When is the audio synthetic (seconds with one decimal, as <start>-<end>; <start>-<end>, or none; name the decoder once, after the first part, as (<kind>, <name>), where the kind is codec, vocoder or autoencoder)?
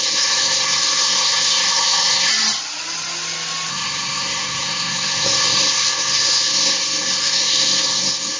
0.0-2.3 (codec, SNAC); 3.7-8.4